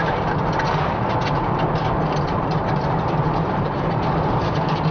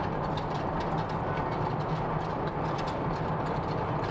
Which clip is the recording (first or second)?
second